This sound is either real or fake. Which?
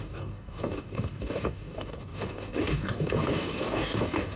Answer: fake